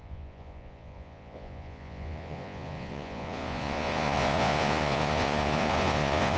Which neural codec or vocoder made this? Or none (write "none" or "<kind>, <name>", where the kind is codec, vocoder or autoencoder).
vocoder, Vocos